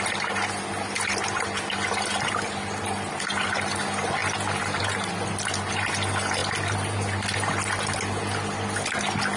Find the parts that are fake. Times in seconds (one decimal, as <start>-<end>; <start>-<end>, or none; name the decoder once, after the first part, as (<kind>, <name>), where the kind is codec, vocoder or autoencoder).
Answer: none

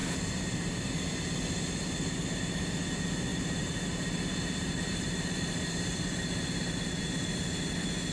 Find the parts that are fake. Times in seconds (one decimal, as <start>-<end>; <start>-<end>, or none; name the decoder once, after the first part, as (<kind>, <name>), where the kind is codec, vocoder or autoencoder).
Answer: 0.0-0.9 (vocoder, BigVGAN v2); 3.3-7.0

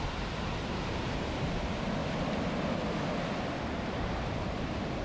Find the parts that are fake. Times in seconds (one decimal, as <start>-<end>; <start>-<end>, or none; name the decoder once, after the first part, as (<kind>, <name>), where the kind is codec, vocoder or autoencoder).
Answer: 0.0-2.0 (vocoder, BigVGAN v2); 3.6-5.0